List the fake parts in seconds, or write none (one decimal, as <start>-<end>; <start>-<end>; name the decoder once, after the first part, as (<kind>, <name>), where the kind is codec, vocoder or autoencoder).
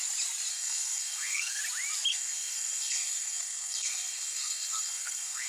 0.5-1.6 (codec, SNAC); 2.1-5.5